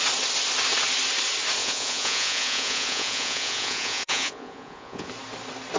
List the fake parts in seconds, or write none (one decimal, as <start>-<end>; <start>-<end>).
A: 1.6-5.1